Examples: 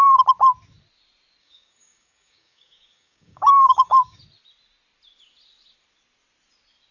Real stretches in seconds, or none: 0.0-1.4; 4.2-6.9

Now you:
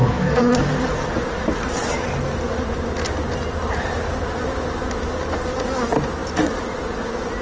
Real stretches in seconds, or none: 0.5-7.4

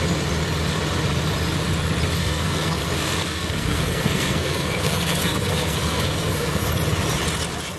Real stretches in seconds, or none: 0.0-2.2; 6.7-7.8

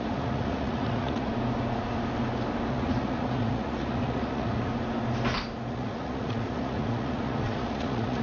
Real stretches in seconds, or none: 1.3-2.7; 4.7-5.7

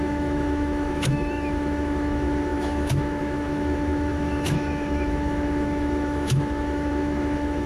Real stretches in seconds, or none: none

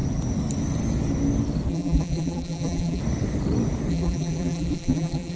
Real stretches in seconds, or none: 0.0-1.7; 3.0-3.9

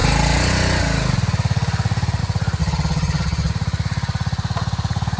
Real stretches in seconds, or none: 0.0-2.6; 3.5-5.2